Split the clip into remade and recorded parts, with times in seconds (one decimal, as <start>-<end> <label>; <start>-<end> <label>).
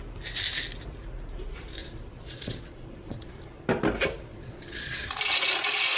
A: 0.0-1.8 recorded; 1.8-3.3 remade; 3.3-4.3 recorded; 4.3-5.2 remade; 5.2-6.0 recorded